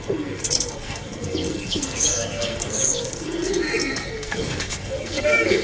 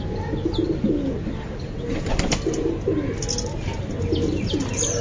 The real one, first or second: second